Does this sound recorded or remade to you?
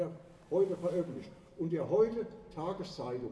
recorded